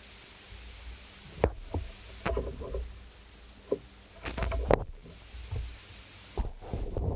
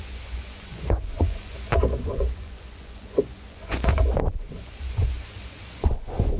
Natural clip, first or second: first